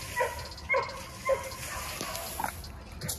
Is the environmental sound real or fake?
real